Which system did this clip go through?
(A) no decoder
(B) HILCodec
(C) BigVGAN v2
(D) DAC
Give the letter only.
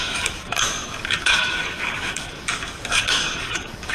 D